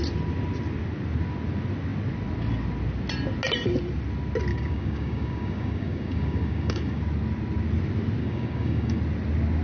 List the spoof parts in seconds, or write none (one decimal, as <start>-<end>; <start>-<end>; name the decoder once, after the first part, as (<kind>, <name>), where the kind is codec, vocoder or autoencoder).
4.5-7.0 (codec, DAC); 8.2-9.0